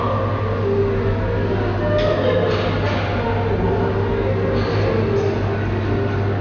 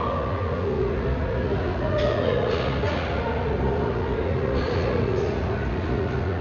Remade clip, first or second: second